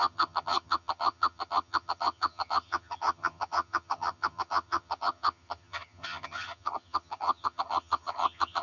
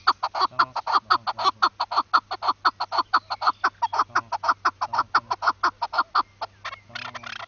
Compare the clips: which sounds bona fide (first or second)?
second